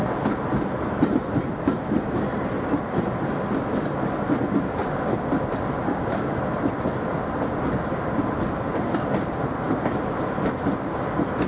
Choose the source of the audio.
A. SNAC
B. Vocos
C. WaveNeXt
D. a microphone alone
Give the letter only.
D